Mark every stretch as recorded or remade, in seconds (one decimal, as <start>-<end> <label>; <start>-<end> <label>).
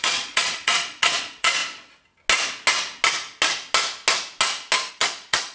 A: 0.0-1.6 remade; 1.6-4.9 recorded; 4.9-5.5 remade